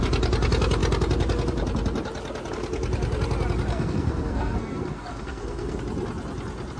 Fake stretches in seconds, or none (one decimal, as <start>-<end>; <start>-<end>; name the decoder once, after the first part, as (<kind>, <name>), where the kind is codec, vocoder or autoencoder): 3.7-5.8 (codec, SNAC)